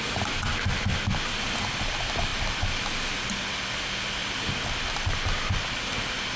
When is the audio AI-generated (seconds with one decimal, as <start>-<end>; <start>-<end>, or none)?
none